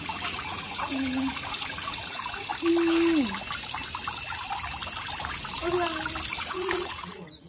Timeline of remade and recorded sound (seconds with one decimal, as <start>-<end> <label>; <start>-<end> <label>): 0.0-2.5 remade; 2.5-6.4 recorded; 6.4-7.5 remade